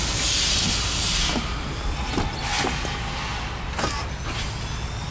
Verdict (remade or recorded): recorded